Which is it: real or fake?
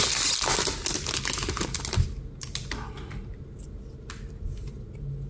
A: real